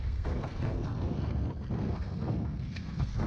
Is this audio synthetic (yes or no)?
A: yes